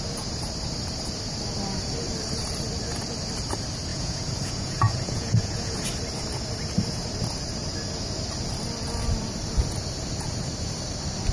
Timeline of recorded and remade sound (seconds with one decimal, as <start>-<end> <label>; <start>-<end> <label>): 0.0-3.9 recorded; 3.9-5.9 remade; 5.9-11.3 recorded